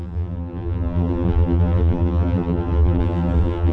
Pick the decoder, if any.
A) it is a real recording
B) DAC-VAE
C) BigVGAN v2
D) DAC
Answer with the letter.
C